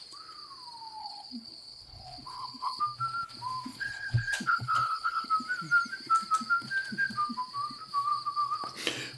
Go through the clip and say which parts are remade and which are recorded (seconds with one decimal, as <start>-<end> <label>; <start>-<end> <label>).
0.0-1.0 recorded; 1.0-2.8 remade; 2.8-3.7 recorded; 3.7-5.3 remade; 5.3-9.2 recorded